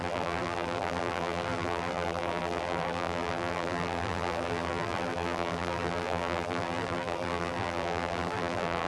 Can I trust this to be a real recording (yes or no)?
no